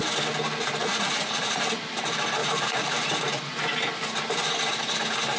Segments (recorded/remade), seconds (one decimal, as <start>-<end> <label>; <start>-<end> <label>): 0.0-0.8 recorded; 0.8-1.6 remade; 1.6-2.4 recorded; 2.4-3.6 remade; 3.6-5.4 recorded